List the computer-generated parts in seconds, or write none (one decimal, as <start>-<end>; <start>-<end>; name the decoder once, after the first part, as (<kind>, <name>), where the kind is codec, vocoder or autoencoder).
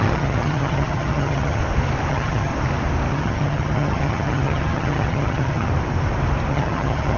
0.0-1.6 (vocoder, HiFi-GAN); 2.1-2.5; 3.1-5.7; 6.5-7.2